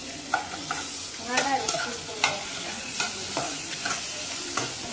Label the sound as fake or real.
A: fake